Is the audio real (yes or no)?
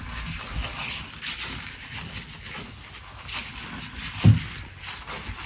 yes